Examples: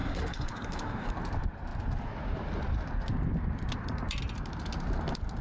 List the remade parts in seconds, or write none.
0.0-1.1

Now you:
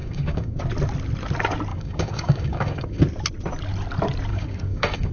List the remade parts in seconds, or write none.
0.0-0.6; 1.7-3.0; 4.3-5.1